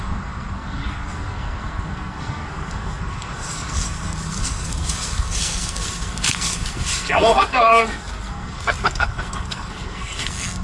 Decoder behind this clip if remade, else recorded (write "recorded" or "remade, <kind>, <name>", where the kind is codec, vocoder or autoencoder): remade, codec, SNAC